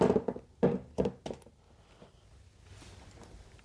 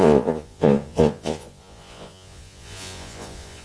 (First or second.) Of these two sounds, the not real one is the second